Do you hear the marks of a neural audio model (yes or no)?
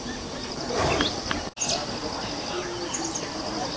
no